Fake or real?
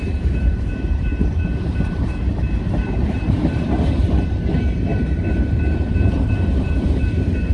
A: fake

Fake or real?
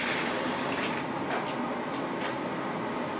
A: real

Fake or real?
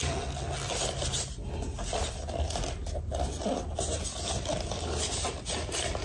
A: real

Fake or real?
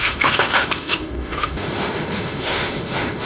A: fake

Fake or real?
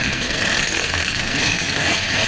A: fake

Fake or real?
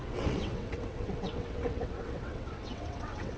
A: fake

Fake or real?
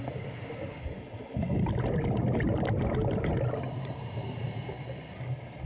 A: real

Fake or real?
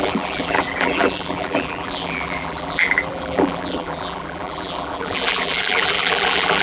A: fake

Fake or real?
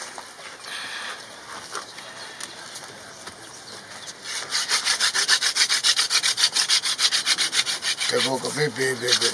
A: real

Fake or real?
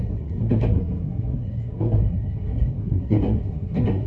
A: fake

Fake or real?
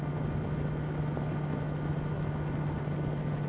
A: real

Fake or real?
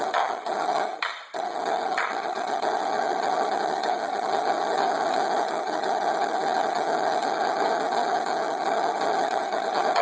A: fake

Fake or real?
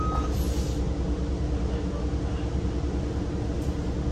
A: real